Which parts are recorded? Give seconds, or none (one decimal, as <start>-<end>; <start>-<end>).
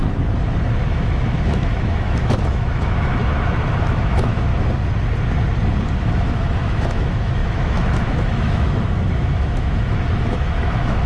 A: 0.0-0.9; 3.2-3.7; 4.5-6.0